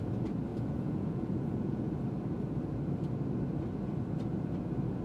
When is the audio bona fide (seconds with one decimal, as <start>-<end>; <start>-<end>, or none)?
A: 0.0-0.5; 1.9-5.0